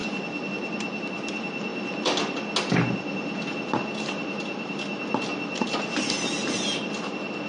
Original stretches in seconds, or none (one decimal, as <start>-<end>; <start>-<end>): 0.0-7.5